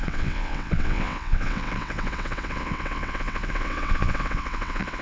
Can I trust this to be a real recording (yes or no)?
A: no